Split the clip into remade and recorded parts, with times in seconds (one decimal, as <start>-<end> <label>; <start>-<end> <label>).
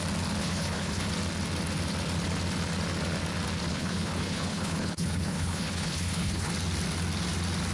0.0-0.4 recorded; 0.4-1.1 remade; 1.1-3.7 recorded; 3.7-6.5 remade; 6.5-7.7 recorded